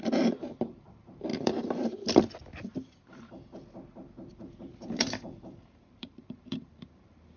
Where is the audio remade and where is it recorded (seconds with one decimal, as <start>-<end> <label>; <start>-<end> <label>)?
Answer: 0.0-1.3 recorded; 1.3-2.2 remade; 2.2-4.3 recorded; 4.3-7.0 remade; 7.0-7.4 recorded